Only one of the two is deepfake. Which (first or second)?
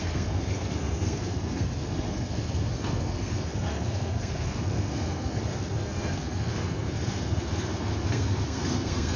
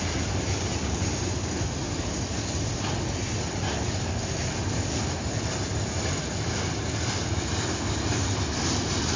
first